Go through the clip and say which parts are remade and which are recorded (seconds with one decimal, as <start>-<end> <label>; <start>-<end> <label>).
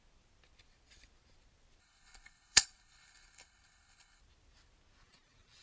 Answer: 0.0-1.8 recorded; 1.8-4.2 remade; 4.2-5.6 recorded